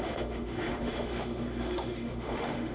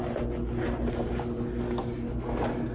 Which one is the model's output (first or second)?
first